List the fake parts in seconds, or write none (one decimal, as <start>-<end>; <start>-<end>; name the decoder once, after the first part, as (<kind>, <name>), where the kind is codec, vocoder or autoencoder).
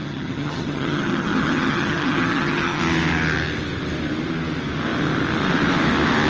0.0-2.8 (vocoder, HiFi-GAN)